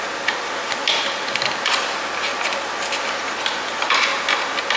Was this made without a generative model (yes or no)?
yes